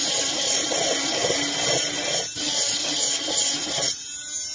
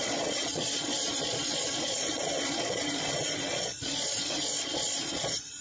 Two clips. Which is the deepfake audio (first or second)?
second